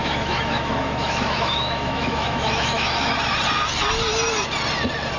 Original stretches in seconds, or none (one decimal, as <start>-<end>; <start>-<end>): 3.1-5.2